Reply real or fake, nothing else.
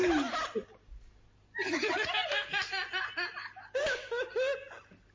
real